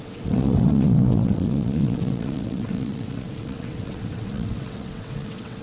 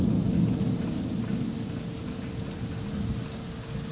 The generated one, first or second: first